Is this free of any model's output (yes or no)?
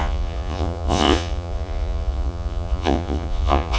no